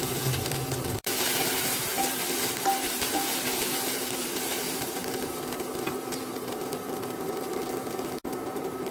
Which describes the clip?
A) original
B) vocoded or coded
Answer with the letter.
B